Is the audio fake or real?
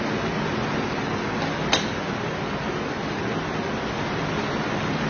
real